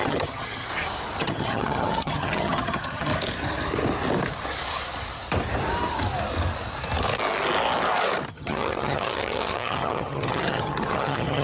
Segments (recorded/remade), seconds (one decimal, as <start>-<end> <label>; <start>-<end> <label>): 0.0-0.7 remade; 0.7-1.2 recorded; 1.2-3.1 remade; 3.1-8.3 recorded; 8.3-11.4 remade